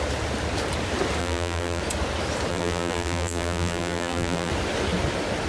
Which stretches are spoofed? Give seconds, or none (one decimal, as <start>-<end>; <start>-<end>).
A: 1.2-1.8; 2.5-4.5